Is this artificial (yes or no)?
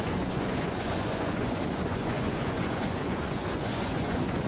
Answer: yes